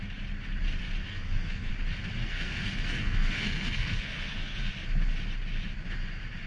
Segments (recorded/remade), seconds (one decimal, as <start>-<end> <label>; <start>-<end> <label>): 0.0-1.0 recorded; 1.0-1.7 remade; 1.7-2.2 recorded; 2.2-4.7 remade; 4.7-6.5 recorded